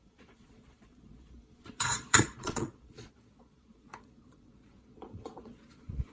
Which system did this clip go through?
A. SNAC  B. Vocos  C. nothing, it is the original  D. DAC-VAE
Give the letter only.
B